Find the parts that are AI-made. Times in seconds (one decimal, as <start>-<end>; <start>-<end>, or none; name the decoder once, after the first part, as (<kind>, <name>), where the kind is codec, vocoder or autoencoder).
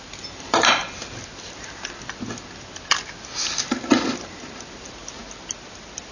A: none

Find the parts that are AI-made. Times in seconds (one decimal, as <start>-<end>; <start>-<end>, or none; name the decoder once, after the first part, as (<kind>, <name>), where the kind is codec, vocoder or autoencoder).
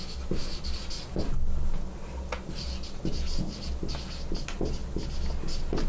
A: none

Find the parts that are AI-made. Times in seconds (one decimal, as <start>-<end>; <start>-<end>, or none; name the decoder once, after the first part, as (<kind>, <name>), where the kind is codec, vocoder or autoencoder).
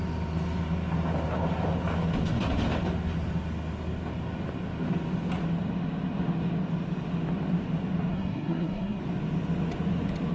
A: 8.1-9.0 (codec, SNAC)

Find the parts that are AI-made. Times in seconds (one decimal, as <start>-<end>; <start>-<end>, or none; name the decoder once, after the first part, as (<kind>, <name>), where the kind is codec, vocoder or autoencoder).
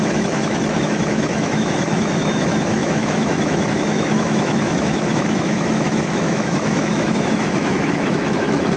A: 0.0-8.8 (autoencoder, DAC-VAE)